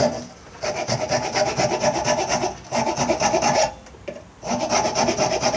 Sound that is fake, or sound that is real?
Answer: real